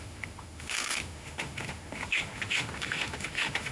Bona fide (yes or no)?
no